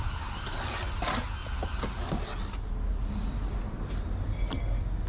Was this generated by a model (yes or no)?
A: no